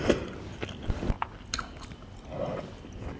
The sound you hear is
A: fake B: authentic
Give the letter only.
B